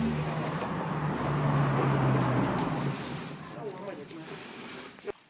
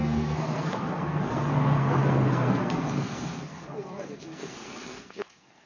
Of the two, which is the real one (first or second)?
first